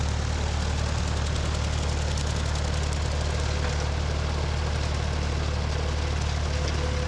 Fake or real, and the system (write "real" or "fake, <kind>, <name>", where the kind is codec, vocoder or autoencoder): real